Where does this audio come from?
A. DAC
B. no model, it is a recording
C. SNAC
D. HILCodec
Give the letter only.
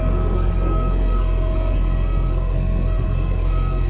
C